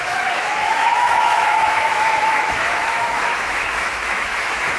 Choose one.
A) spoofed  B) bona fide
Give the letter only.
A